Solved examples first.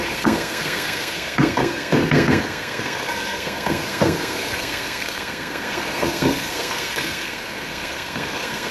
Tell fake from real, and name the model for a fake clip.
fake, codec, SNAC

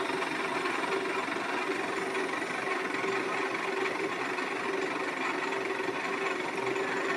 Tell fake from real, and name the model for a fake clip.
real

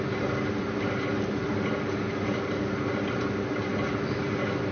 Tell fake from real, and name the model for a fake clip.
real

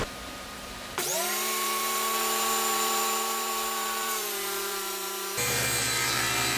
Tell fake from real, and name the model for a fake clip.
fake, vocoder, BigVGAN v2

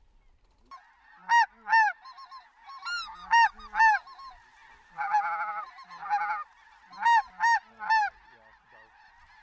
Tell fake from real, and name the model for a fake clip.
real